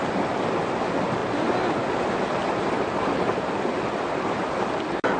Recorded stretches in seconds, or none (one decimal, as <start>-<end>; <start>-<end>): 0.0-5.2

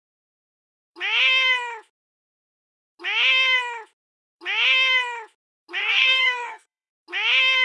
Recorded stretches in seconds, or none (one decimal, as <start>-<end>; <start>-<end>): 0.0-5.8; 6.9-7.6

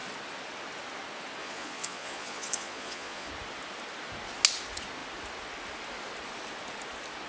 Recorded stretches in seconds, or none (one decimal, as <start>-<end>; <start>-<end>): 0.0-1.4; 3.3-7.3

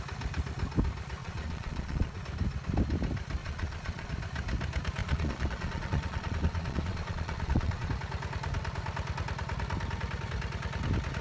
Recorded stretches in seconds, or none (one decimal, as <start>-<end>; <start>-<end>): 0.0-1.2; 2.2-3.4; 4.1-5.0; 7.9-11.2

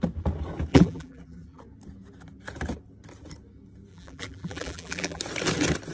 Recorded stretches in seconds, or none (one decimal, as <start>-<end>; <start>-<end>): 0.0-0.7; 1.6-3.9; 5.2-5.9

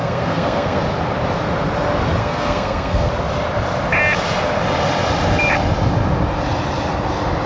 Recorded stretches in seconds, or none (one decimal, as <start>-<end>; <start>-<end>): 0.8-2.2; 3.1-7.5